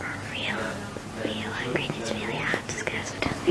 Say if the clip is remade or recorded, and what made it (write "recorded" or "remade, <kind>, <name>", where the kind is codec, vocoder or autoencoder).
recorded